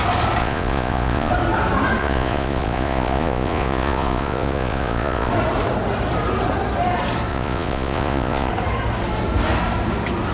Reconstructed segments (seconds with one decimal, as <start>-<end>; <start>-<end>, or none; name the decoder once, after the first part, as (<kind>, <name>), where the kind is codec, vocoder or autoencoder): 0.4-1.3 (vocoder, Vocos); 2.0-5.3; 7.3-8.5